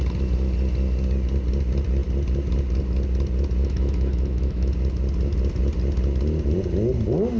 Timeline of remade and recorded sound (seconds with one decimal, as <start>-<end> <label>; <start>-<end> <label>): 0.0-3.6 recorded; 3.6-4.7 remade; 4.7-7.4 recorded

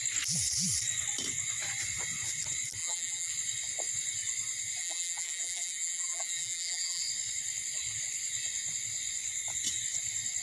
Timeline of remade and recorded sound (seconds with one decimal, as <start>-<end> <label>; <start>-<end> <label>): 0.0-2.8 recorded; 2.8-3.3 remade; 3.3-4.8 recorded; 4.8-7.0 remade; 7.0-10.4 recorded